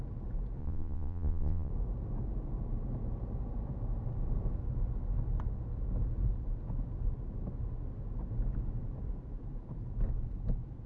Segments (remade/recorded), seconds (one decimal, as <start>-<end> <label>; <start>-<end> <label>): 0.0-0.6 recorded; 0.6-1.7 remade; 1.7-10.9 recorded